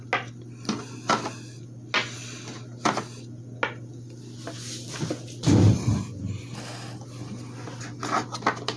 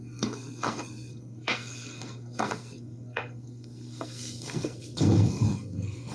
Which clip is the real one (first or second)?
first